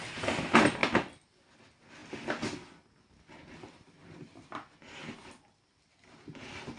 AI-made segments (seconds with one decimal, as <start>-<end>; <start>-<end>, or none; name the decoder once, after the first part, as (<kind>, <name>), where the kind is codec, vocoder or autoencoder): none